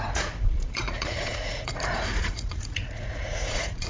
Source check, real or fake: fake